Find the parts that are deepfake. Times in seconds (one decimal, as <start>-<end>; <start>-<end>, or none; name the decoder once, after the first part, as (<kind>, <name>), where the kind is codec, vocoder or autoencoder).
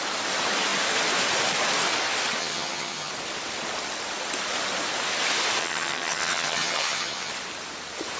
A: 2.4-3.1 (vocoder, HiFi-GAN); 5.6-7.3